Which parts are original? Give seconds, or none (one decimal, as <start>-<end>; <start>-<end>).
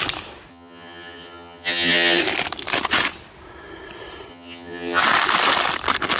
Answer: 0.0-0.5; 2.2-4.3; 5.0-6.2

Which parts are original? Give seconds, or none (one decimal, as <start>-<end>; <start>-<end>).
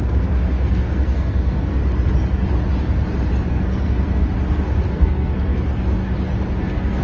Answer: 1.8-3.5; 4.2-4.9; 6.0-6.6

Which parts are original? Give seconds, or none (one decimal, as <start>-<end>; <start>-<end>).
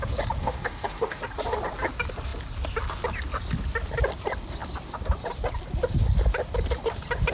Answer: 0.0-0.4; 1.2-7.3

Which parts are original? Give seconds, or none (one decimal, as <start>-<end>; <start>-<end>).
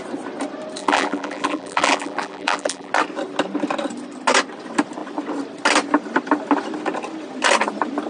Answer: 0.0-0.8; 2.9-8.1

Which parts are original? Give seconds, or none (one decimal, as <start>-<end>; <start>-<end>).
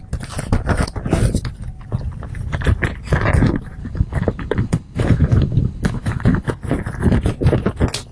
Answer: 0.0-3.8; 6.5-8.1